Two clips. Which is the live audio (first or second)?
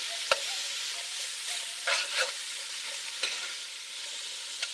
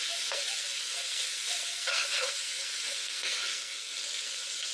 first